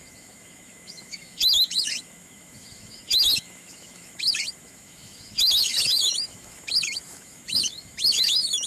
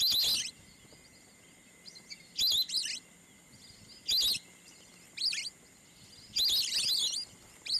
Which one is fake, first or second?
first